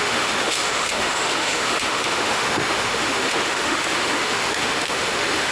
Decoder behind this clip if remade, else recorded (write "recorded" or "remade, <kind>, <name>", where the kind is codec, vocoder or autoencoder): remade, autoencoder, DAC-VAE